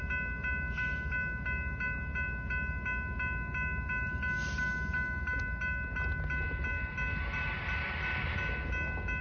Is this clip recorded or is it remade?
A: recorded